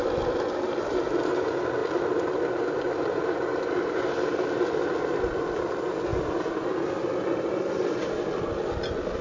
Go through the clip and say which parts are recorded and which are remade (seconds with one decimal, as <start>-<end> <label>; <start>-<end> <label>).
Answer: 0.0-1.8 recorded; 1.8-2.4 remade; 2.4-9.2 recorded